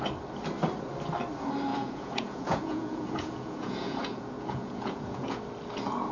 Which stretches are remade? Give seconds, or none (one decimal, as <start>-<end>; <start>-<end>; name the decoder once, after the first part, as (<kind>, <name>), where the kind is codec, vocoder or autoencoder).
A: 1.7-5.4 (vocoder, Vocos)